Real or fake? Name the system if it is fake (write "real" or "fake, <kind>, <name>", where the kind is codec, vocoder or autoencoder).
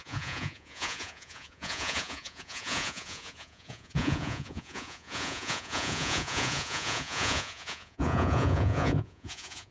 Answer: fake, vocoder, Vocos